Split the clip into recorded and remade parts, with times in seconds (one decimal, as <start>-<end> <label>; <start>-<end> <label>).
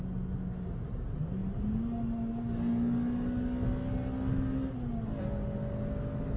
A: 0.0-6.4 recorded